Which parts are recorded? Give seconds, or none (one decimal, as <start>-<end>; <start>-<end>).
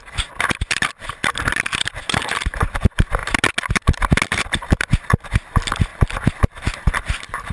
3.2-4.8; 5.9-6.6